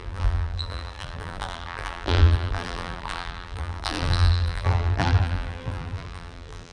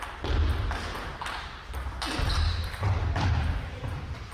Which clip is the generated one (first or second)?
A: first